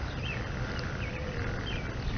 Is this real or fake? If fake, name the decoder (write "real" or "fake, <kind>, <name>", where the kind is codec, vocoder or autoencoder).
real